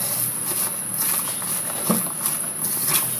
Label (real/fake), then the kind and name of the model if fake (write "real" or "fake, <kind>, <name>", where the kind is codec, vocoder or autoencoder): real